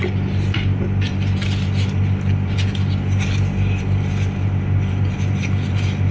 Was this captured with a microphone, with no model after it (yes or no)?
yes